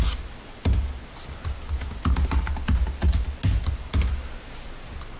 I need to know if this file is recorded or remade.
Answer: recorded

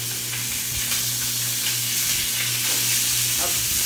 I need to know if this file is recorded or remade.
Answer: recorded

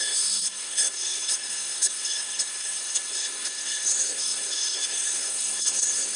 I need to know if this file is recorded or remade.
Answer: remade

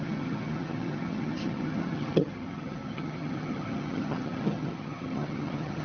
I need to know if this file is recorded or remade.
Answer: remade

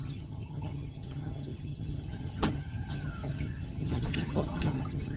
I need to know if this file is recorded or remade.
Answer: remade